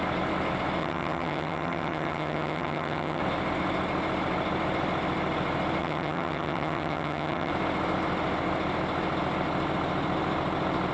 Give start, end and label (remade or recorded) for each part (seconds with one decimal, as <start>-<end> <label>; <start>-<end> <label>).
0.0-0.8 recorded; 0.8-3.2 remade; 3.2-5.8 recorded; 5.8-7.5 remade; 7.5-10.9 recorded